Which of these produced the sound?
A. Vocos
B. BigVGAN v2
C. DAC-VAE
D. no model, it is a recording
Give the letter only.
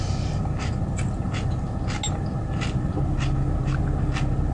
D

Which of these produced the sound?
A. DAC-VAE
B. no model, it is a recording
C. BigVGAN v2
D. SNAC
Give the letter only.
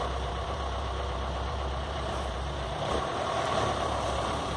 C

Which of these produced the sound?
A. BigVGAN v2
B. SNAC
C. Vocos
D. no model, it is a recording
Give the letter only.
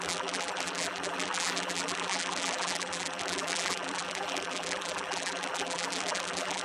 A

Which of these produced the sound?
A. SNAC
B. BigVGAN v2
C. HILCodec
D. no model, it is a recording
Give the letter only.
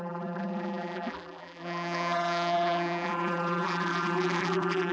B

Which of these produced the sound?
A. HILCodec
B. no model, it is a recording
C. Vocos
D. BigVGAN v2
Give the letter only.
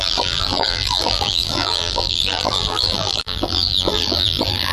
D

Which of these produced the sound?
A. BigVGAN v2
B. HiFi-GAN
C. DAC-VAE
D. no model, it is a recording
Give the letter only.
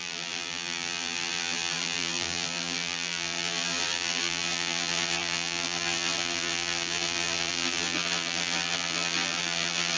A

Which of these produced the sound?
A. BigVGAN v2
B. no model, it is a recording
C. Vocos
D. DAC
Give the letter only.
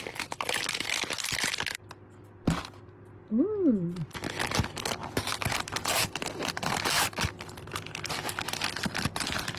B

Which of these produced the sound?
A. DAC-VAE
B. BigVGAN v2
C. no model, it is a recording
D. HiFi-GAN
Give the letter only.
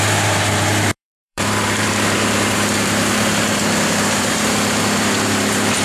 B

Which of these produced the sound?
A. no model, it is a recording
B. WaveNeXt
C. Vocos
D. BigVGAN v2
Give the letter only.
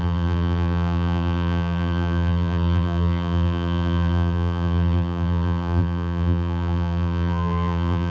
D